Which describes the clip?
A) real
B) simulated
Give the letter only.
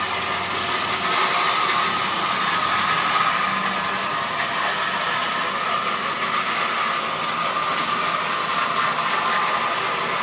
A